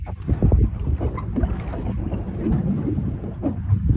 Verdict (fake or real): real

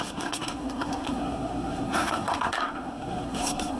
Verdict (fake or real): fake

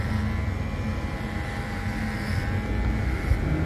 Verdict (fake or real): real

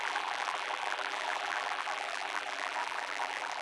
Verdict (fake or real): fake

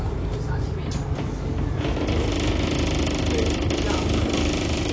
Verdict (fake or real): real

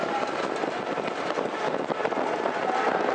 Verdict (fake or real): real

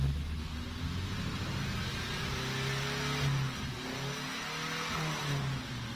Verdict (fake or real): real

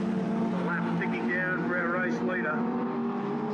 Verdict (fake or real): real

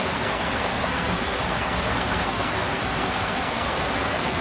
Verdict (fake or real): fake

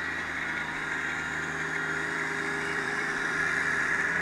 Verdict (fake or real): fake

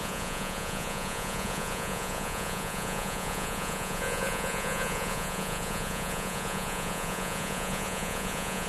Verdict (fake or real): fake